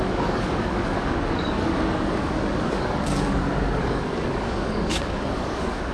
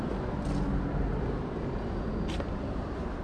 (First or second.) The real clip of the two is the second